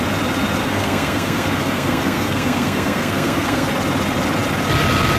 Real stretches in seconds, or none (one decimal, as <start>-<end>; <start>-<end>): 0.0-0.6; 3.7-5.2